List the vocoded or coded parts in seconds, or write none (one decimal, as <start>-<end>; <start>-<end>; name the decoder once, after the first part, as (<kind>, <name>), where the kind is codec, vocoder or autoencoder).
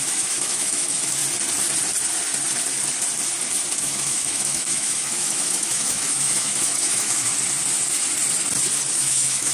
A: 0.0-1.2 (autoencoder, DAC-VAE); 3.8-7.3; 8.9-9.5